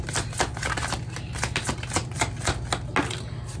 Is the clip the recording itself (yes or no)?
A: yes